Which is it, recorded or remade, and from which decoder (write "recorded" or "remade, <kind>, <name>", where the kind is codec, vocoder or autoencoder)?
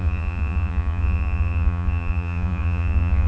remade, vocoder, Vocos